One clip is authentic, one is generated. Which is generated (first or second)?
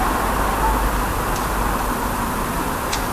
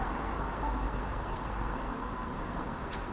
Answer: second